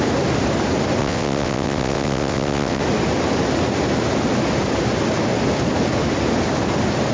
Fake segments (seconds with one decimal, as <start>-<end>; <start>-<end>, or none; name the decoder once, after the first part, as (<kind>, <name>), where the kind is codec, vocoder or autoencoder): 1.0-2.8 (vocoder, WaveNeXt)